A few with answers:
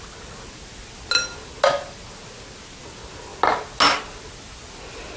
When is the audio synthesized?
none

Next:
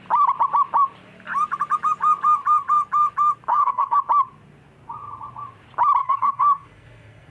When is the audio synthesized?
3.5-4.0 (codec, SNAC); 6.0-7.3